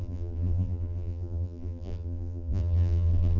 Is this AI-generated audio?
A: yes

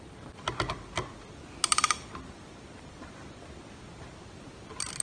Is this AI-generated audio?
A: no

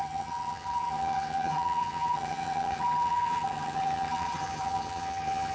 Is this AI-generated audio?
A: yes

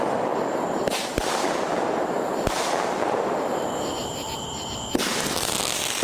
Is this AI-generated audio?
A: yes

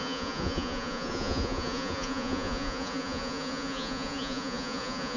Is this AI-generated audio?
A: yes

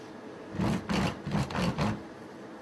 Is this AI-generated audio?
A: no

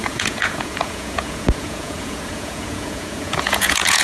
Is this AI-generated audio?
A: yes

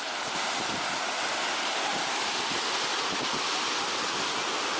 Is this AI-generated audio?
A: no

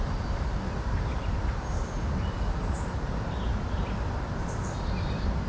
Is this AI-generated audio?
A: no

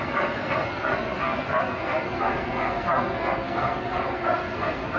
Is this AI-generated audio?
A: yes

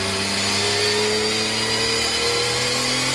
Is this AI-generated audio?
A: no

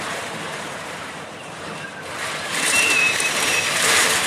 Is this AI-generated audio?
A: yes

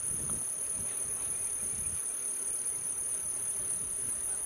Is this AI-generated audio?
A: no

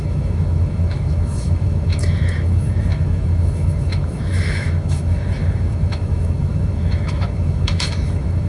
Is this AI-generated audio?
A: yes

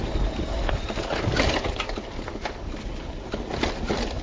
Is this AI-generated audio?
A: no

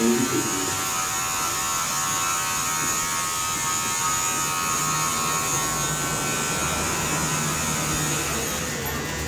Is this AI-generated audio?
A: no